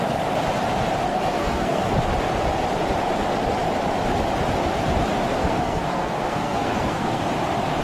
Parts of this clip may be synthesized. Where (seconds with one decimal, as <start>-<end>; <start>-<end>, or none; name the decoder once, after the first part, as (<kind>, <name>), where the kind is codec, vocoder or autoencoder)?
1.1-1.9 (codec, SNAC); 5.4-7.2